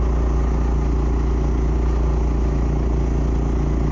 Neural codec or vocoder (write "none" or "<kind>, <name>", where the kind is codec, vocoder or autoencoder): none